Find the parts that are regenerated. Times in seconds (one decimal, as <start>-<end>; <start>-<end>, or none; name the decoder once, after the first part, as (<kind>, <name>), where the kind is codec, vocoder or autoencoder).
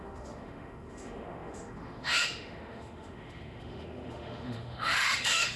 0.0-5.6 (autoencoder, DAC-VAE)